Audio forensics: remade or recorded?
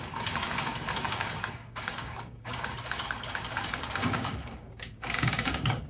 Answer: remade